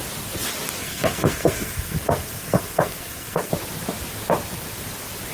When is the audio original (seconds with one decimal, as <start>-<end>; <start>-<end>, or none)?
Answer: 0.0-0.8; 3.5-5.3